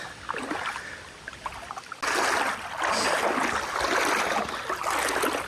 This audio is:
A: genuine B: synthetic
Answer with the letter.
A